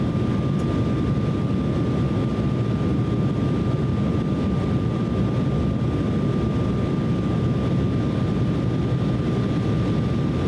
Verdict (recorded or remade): recorded